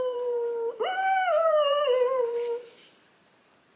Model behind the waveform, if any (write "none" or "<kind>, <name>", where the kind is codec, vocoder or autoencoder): vocoder, BigVGAN v2